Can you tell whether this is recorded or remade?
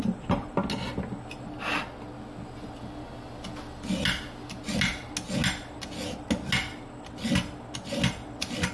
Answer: recorded